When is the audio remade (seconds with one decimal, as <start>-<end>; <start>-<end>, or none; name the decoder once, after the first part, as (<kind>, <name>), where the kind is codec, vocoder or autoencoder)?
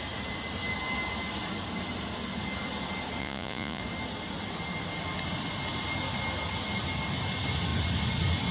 3.2-3.8 (vocoder, Vocos)